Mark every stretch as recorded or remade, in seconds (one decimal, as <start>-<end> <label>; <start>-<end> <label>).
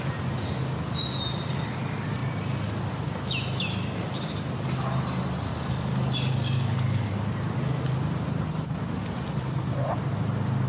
0.0-5.5 recorded; 5.5-7.1 remade; 7.1-10.7 recorded